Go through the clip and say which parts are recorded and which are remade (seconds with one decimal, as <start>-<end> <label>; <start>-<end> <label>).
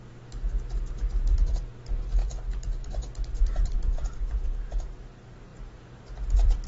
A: 0.0-3.3 recorded; 3.3-5.0 remade; 5.0-6.7 recorded